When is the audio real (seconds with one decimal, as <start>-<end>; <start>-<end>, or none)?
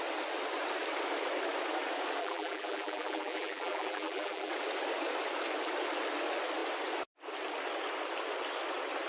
0.0-2.2; 4.5-9.1